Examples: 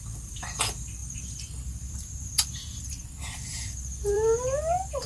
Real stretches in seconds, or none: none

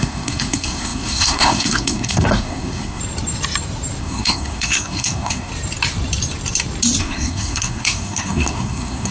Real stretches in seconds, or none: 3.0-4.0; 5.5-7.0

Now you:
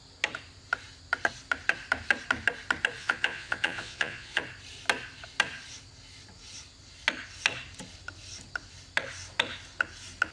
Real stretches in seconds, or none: 0.0-3.0; 4.4-10.3

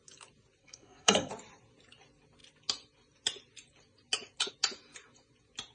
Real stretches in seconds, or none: 0.0-0.6; 1.3-5.7

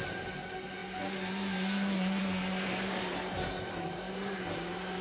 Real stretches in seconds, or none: 0.8-2.2

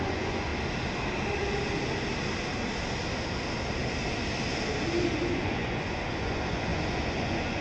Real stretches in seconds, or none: 0.5-5.1

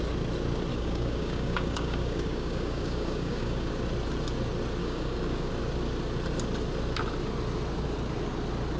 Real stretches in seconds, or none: 0.0-0.7; 3.7-4.8; 5.5-8.8

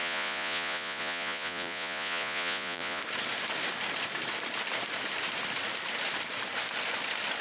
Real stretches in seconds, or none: 3.0-7.4